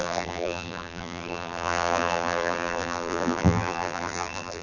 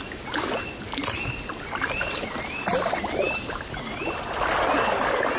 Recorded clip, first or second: second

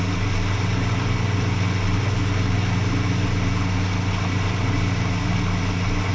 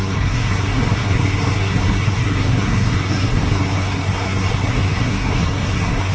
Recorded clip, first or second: first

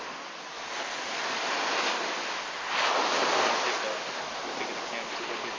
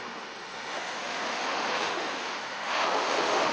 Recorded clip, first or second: first